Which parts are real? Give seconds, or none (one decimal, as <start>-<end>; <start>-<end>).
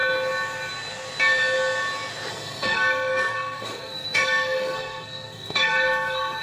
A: 0.0-2.3